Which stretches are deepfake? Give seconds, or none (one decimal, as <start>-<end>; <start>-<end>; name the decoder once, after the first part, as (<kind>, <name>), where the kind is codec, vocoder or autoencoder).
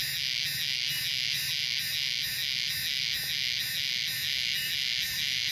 none